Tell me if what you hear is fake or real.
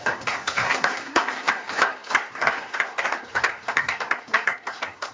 fake